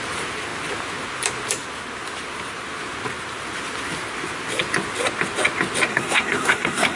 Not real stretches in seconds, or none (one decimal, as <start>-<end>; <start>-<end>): 5.9-7.0